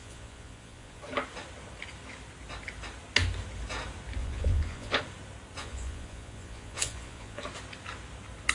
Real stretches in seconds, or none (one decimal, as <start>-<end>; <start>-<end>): 1.0-4.2; 5.0-5.6; 7.4-8.5